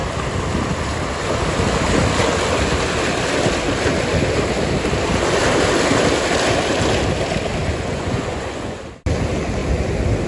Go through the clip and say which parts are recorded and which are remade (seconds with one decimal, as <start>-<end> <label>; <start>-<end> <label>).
0.0-7.6 recorded; 7.6-8.8 remade; 8.8-10.3 recorded